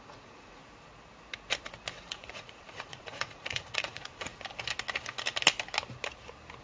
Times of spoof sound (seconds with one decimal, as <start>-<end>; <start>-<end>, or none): 0.0-0.6; 2.0-4.3

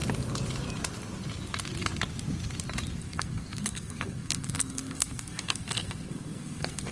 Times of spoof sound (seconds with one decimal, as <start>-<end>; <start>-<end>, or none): 3.0-6.9

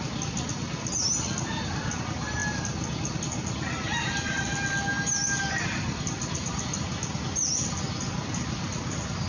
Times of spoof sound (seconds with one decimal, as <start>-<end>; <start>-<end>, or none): none